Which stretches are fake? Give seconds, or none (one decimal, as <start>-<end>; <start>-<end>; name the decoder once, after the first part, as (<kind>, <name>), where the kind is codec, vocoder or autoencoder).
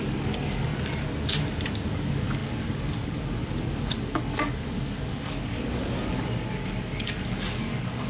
0.0-0.7 (codec, DAC); 1.9-8.1